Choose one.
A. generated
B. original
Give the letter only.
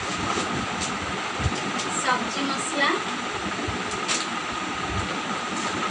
B